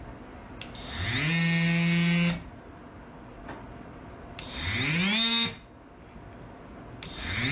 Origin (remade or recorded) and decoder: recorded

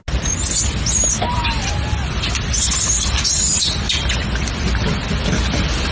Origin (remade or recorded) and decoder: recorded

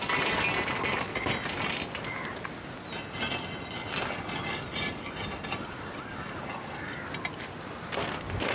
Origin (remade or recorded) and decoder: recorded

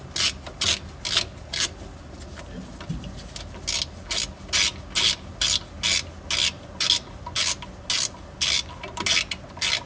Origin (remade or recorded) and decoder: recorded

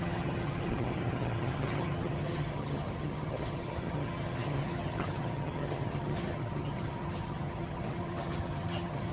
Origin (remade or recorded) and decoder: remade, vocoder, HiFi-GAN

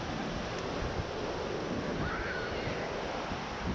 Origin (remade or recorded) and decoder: recorded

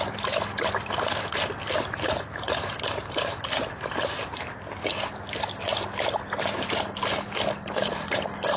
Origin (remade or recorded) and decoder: recorded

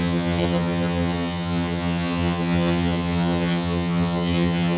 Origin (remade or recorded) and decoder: remade, vocoder, HiFi-GAN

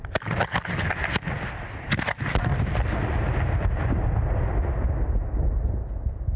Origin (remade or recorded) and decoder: recorded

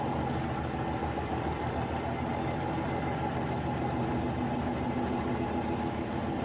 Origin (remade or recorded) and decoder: recorded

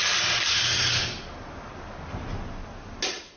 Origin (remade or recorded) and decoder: recorded